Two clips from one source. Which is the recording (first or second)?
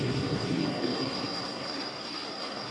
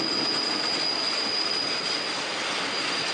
second